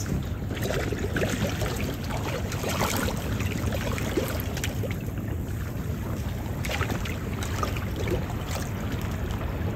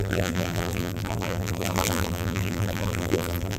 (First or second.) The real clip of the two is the first